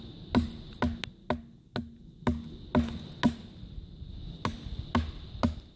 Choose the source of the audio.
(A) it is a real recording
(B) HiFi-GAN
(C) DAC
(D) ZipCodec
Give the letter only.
A